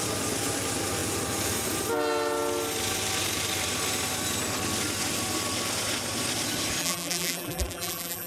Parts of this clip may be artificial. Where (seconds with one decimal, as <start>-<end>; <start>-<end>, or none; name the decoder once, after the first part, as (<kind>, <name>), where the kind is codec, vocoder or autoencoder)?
6.8-8.3 (vocoder, BigVGAN v2)

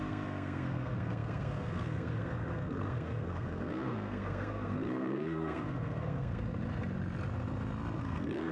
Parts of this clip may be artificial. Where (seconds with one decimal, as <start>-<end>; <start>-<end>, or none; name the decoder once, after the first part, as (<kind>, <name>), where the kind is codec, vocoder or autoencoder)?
0.0-6.5 (codec, SNAC); 8.0-8.5

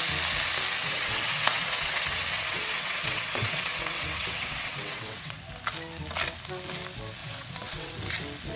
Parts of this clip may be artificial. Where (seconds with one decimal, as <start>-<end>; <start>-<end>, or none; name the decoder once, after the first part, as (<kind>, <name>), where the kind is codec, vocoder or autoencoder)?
0.8-5.4 (vocoder, WaveNeXt); 7.2-8.1

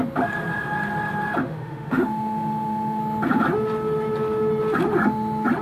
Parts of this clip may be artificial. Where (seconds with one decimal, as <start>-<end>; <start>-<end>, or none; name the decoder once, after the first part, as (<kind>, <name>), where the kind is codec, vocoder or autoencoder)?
1.4-3.0 (autoencoder, DAC-VAE)

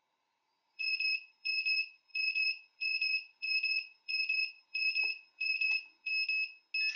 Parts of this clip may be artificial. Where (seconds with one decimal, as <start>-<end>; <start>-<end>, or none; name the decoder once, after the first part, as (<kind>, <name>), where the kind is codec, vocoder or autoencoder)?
0.0-6.1 (vocoder, Vocos)

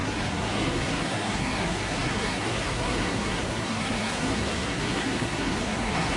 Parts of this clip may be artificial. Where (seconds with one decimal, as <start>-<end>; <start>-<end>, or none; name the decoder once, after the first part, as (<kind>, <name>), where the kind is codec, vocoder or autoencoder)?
0.0-6.2 (codec, SNAC)